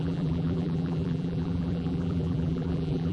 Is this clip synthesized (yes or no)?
yes